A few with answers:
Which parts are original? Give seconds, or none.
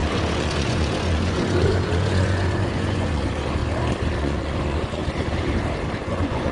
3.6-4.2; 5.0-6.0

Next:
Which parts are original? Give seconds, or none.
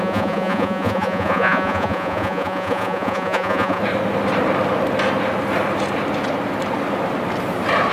3.8-7.9